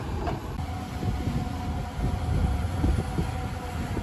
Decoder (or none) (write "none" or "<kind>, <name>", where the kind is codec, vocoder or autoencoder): none